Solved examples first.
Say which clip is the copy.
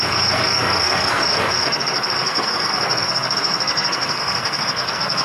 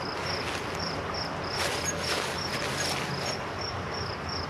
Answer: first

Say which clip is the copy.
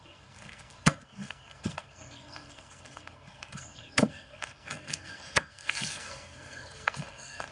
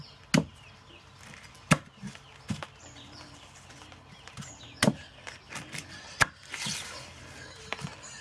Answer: first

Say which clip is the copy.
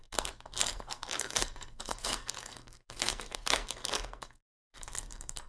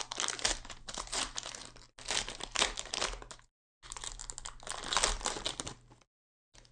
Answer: first